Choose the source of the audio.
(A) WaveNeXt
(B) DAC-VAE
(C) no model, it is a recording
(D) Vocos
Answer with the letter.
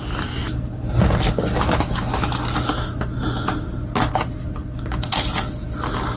C